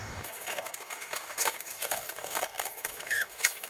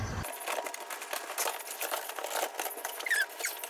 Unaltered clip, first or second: second